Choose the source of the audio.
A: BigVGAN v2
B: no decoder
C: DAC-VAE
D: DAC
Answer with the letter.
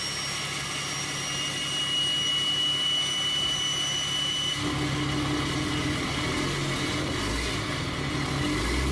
B